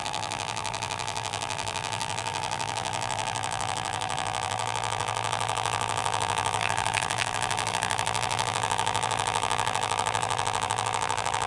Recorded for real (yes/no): no